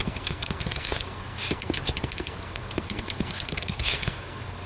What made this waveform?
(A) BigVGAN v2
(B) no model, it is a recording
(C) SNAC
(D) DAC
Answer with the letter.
C